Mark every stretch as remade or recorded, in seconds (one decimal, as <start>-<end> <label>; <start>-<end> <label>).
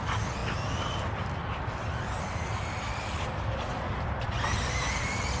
0.0-5.4 recorded